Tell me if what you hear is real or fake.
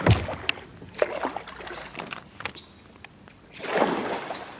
real